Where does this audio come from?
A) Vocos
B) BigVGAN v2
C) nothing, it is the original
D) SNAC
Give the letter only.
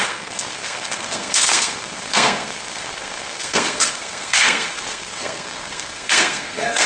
D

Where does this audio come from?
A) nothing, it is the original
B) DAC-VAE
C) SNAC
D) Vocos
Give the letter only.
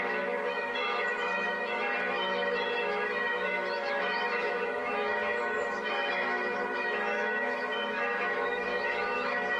B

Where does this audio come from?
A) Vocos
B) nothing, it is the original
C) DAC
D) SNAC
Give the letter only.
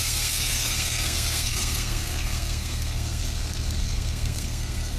D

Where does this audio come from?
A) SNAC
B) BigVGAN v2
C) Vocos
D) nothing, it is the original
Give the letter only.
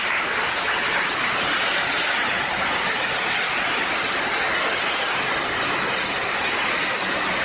D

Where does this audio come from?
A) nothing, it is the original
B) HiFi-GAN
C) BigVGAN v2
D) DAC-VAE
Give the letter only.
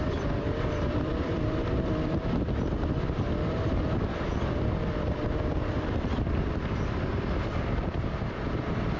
C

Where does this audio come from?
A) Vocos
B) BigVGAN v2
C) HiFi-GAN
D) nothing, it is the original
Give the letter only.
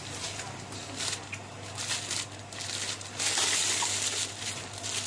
D